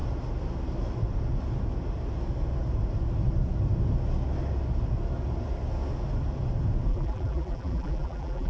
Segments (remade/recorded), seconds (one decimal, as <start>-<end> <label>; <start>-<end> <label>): 0.0-6.9 recorded; 6.9-8.5 remade